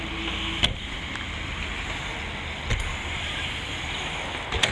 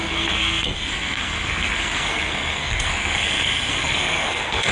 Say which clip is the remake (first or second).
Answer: second